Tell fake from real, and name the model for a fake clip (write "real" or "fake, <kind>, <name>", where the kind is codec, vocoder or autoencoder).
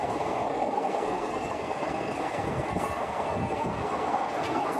fake, codec, SNAC